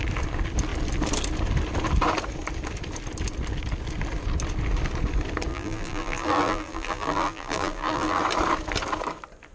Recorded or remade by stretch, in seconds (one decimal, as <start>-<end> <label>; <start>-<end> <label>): 0.0-5.5 recorded; 5.5-8.2 remade; 8.2-9.5 recorded